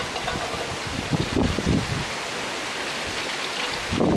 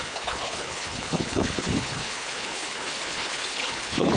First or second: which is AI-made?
second